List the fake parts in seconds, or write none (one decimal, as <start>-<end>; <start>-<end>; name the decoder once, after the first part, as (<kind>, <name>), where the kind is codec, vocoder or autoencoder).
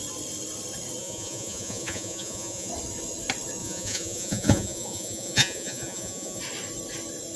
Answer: 1.0-2.7 (vocoder, Vocos); 3.6-6.4